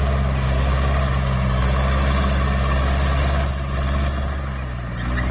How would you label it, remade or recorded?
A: recorded